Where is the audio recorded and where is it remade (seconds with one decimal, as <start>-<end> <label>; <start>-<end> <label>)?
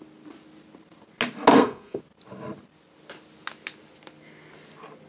0.0-1.5 recorded; 1.5-2.0 remade; 2.0-5.1 recorded